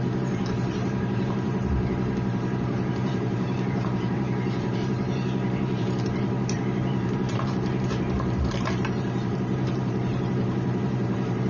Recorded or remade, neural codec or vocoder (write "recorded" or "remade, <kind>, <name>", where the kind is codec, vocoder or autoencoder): remade, vocoder, BigVGAN v2